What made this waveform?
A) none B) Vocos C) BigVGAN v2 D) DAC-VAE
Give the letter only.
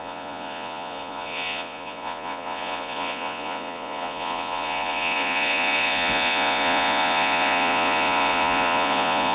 B